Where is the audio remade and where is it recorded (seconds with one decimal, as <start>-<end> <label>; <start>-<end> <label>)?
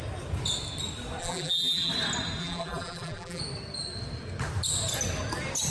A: 0.0-1.2 recorded; 1.2-1.9 remade; 1.9-2.4 recorded; 2.4-3.4 remade; 3.4-5.7 recorded